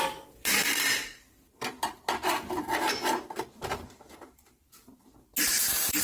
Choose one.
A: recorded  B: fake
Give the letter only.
B